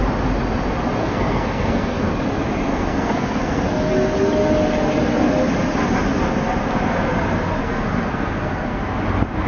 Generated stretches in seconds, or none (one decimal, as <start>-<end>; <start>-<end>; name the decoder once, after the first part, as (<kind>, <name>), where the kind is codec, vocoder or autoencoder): 1.0-2.1 (codec, SNAC); 2.7-3.9; 7.6-8.8